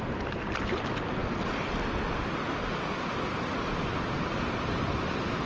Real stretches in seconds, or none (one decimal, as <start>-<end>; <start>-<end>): 0.0-5.5